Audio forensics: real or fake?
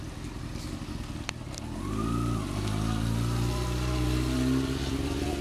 real